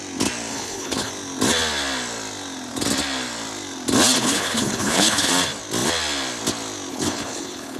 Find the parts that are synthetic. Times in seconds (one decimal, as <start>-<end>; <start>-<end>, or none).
0.5-1.1; 4.2-5.3; 6.9-7.8

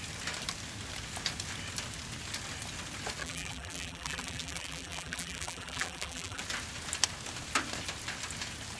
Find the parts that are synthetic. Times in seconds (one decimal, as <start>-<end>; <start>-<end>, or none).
3.2-6.4

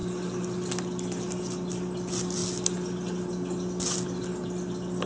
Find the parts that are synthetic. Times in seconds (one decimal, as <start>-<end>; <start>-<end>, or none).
none

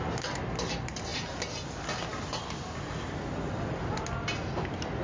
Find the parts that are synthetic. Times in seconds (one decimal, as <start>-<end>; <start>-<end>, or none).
none

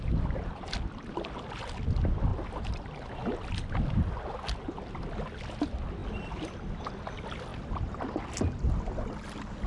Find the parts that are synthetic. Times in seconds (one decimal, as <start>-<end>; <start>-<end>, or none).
none

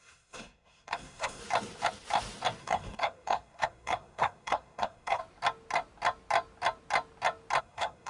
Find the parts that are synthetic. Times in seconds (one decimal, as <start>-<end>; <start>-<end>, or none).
0.0-1.4; 2.6-5.2; 7.6-8.1

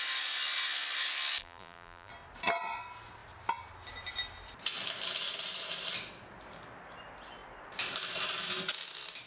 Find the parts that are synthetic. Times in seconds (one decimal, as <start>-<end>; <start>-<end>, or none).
1.4-2.1